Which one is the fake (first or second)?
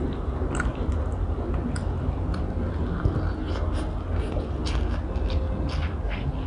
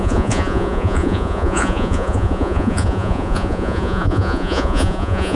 second